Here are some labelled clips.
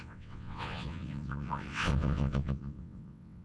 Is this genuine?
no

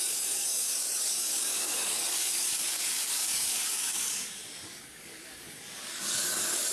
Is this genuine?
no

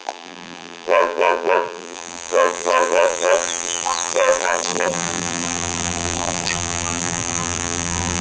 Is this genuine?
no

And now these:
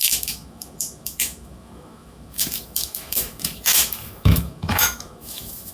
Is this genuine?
no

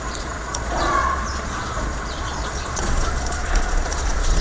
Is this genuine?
no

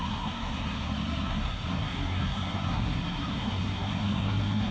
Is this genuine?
no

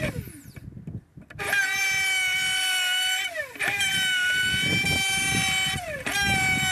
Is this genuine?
yes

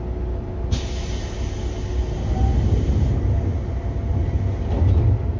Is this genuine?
yes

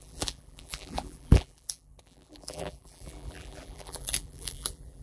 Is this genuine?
no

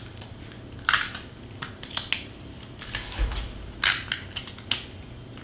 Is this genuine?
yes